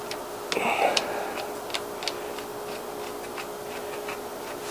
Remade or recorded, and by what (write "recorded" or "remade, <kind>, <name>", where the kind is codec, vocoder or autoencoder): recorded